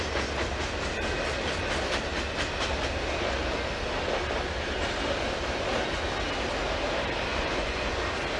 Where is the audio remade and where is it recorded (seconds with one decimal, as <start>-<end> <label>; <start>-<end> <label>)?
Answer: 0.0-7.3 recorded; 7.3-8.0 remade; 8.0-8.4 recorded